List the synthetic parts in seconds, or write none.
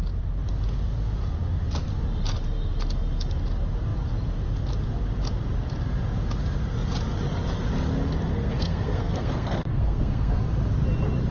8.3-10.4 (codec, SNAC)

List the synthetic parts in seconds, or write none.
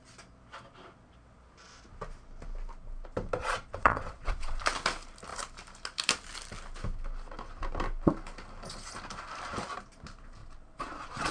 3.4-4.6 (vocoder, Vocos); 10.4-11.3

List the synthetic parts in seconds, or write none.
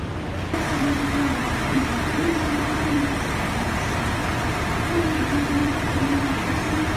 1.4-3.5 (vocoder, BigVGAN v2); 4.2-4.9; 5.6-7.0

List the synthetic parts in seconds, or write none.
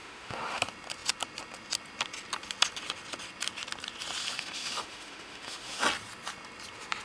0.0-0.6 (autoencoder, DAC-VAE); 4.2-5.8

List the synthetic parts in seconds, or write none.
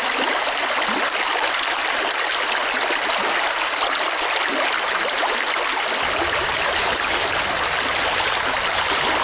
none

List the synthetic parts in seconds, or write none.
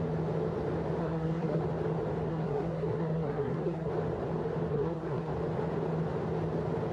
1.0-1.6 (codec, SNAC); 2.3-3.9; 4.7-5.3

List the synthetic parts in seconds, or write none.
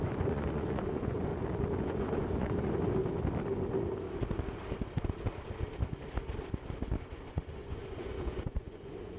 0.0-1.3 (vocoder, Vocos); 1.8-3.0; 7.3-9.2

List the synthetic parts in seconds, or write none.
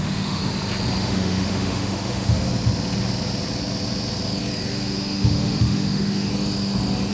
0.0-0.4 (autoencoder, DAC-VAE); 1.0-2.5; 4.7-6.3